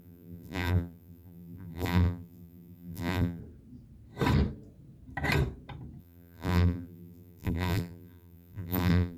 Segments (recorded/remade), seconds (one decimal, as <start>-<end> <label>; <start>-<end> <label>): 0.0-3.4 remade; 3.4-6.0 recorded; 6.0-9.2 remade

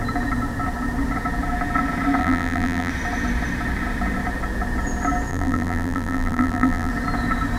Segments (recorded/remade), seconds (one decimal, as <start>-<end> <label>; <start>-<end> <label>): 0.0-2.2 recorded; 2.2-2.9 remade; 2.9-5.3 recorded; 5.3-6.9 remade; 6.9-7.6 recorded

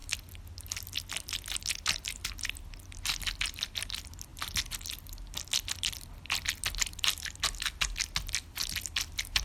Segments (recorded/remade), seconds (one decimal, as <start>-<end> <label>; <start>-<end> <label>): 0.0-9.4 recorded